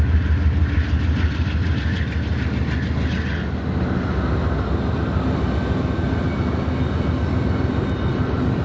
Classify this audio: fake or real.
real